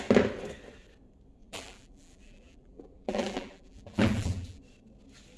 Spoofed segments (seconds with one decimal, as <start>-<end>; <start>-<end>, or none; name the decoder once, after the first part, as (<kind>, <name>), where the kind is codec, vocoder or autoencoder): 1.4-4.6 (vocoder, BigVGAN v2)